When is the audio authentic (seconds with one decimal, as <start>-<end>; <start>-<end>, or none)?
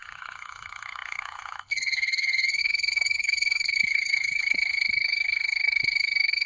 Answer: none